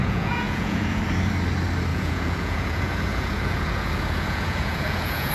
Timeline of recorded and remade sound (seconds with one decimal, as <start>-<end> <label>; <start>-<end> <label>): 0.0-1.0 remade; 1.0-1.9 recorded; 1.9-5.3 remade